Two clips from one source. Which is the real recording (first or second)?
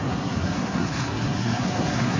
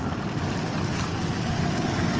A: second